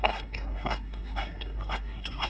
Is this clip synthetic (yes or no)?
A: yes